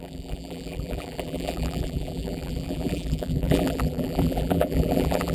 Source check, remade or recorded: remade